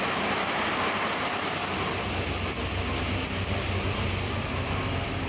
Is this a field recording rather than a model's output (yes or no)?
yes